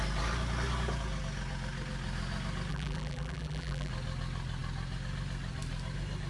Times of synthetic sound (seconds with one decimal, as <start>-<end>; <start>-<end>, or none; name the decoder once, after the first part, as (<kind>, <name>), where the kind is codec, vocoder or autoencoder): 2.7-3.9 (vocoder, BigVGAN v2)